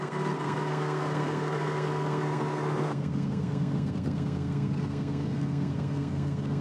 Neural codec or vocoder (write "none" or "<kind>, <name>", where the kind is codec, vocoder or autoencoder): codec, SNAC